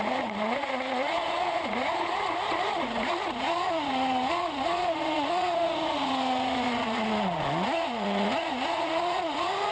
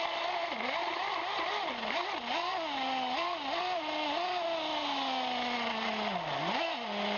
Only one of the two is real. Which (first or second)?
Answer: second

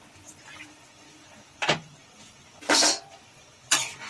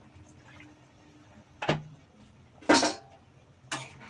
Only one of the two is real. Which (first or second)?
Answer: second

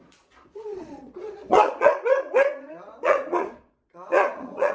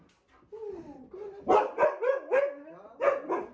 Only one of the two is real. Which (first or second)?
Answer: second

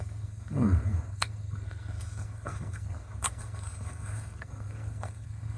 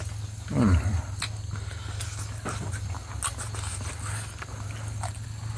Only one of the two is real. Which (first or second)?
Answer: second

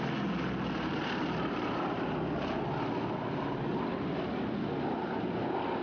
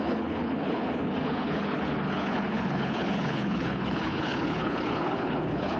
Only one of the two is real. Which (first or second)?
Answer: first